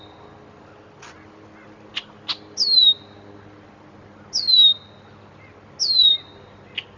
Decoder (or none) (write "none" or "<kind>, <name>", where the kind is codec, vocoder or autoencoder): none